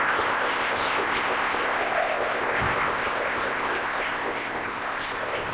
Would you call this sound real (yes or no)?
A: no